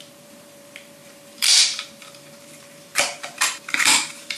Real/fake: fake